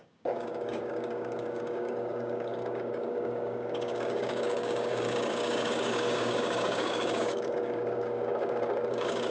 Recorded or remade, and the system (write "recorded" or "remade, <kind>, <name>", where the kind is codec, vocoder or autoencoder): remade, codec, DAC